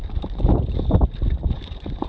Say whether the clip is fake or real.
fake